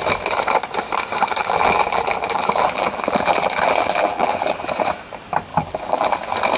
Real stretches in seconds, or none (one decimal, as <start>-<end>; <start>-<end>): 0.0-1.4; 4.7-5.5; 6.1-6.6